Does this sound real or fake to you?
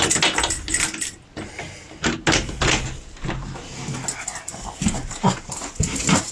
real